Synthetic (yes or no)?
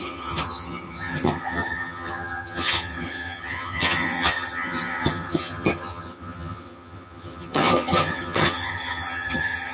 yes